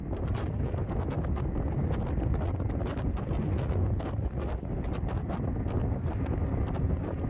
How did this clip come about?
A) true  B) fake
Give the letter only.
A